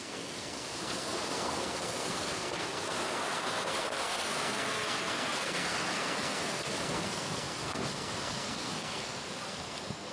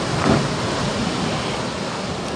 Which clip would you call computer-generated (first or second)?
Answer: first